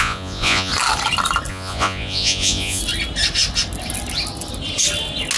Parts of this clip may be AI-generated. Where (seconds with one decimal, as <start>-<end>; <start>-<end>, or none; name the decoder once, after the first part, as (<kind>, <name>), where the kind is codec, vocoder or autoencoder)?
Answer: 0.0-0.7 (vocoder, Vocos); 1.5-2.8